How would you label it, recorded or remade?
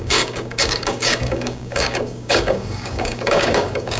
remade